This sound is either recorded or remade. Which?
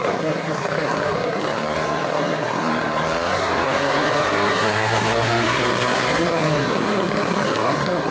remade